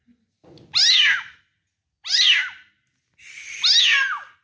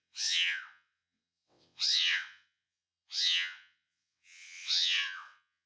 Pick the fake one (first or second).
second